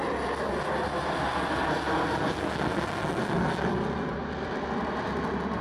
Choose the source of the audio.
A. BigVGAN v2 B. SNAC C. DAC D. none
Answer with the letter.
D